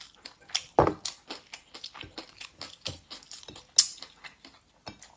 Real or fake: real